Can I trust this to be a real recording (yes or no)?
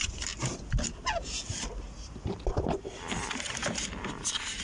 yes